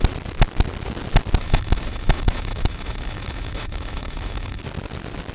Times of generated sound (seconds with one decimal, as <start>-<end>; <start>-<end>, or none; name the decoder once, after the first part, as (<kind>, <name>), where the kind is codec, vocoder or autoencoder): 1.4-4.6 (autoencoder, DAC-VAE)

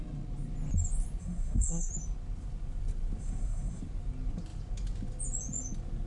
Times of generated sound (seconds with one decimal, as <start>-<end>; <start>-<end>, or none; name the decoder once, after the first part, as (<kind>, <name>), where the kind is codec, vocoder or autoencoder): 1.2-1.9 (codec, SNAC); 3.2-3.8

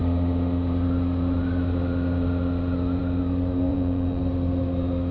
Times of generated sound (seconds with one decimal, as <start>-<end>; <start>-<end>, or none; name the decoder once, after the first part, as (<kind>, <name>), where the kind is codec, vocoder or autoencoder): 3.7-4.2 (vocoder, Vocos)

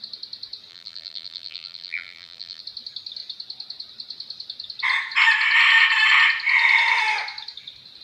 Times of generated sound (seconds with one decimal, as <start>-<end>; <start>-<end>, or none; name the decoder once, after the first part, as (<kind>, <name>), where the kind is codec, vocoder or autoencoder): 0.7-2.6 (vocoder, BigVGAN v2)

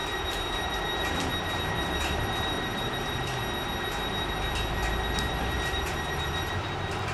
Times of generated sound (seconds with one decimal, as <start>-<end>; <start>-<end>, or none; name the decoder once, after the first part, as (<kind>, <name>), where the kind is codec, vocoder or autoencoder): 0.0-3.4 (vocoder, BigVGAN v2); 5.3-7.1

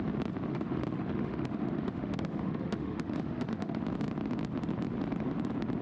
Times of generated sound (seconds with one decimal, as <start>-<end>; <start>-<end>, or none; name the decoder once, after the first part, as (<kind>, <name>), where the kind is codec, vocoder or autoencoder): 0.5-3.8 (autoencoder, DAC-VAE)

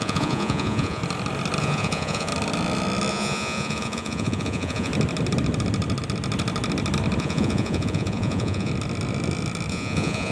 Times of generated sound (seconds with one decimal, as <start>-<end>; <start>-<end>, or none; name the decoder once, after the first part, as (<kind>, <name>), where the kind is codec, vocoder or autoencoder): 0.0-1.0 (vocoder, Vocos); 1.6-2.3; 3.1-4.9; 7.2-8.7; 9.7-10.3

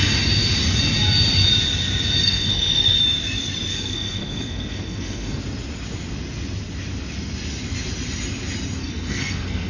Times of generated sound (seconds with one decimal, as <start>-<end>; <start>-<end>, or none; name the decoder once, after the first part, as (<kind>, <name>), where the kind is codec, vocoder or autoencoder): 2.2-3.0 (codec, SNAC); 3.7-5.4; 8.8-9.7